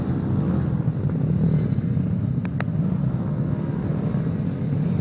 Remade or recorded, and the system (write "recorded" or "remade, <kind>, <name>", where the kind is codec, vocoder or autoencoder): recorded